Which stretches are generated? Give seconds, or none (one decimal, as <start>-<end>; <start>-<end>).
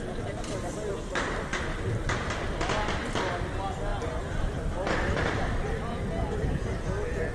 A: none